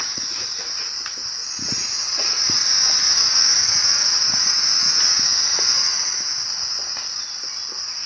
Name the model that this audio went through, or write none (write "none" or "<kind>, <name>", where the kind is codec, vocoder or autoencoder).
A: none